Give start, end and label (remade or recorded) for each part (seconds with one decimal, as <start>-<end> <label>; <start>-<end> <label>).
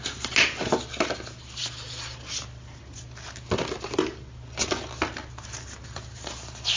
0.0-6.8 recorded